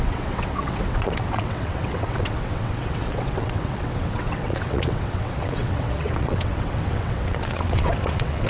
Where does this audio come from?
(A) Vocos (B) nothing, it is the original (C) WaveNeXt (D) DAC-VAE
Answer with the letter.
C